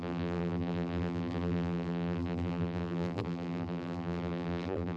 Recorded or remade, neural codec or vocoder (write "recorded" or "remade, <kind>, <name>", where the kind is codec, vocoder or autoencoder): remade, vocoder, BigVGAN v2